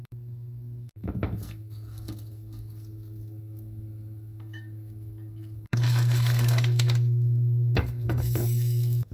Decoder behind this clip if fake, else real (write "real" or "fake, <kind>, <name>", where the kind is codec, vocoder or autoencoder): fake, codec, SNAC